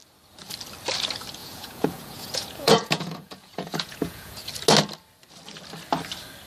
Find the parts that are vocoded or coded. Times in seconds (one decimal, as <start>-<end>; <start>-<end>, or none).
1.4-4.5

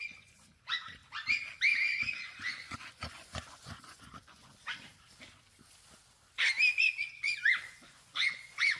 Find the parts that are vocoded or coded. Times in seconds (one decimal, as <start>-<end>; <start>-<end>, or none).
0.0-1.0; 2.0-4.9; 6.8-8.8

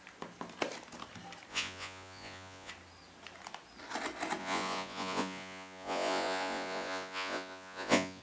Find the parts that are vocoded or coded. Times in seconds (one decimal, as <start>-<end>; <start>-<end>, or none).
1.5-2.7; 4.4-8.2

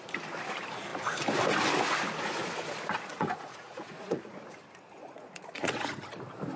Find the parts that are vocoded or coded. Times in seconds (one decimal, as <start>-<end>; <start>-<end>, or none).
3.1-4.3; 5.0-6.0

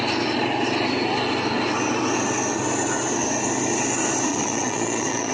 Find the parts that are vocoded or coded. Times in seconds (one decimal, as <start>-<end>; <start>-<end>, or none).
4.3-5.3